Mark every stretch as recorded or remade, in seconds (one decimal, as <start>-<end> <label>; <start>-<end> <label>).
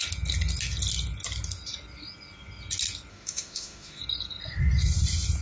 0.0-3.1 recorded; 3.1-4.0 remade; 4.0-5.4 recorded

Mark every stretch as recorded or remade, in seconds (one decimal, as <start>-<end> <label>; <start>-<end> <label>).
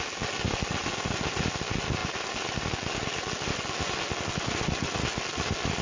0.0-5.8 recorded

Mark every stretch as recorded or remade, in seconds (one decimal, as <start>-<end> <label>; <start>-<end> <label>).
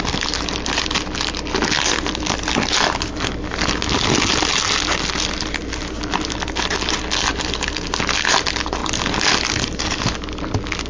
0.0-10.9 recorded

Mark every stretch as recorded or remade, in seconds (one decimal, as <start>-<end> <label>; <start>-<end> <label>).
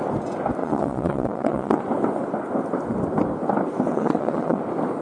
0.0-0.6 recorded; 0.6-1.8 remade; 1.8-3.9 recorded; 3.9-4.6 remade; 4.6-5.0 recorded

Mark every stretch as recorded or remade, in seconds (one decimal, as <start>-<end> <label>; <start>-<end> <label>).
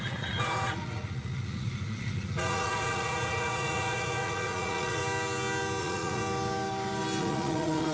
0.0-5.0 remade; 5.0-5.8 recorded; 5.8-6.2 remade; 6.2-7.2 recorded; 7.2-7.9 remade